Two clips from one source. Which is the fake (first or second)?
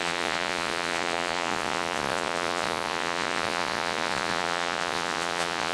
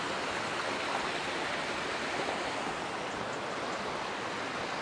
first